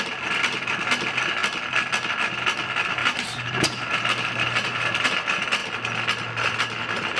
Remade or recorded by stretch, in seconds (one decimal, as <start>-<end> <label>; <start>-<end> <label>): 0.0-3.0 recorded; 3.0-5.1 remade; 5.1-7.2 recorded